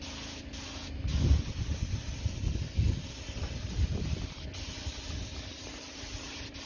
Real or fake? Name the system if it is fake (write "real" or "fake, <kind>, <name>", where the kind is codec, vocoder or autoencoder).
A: real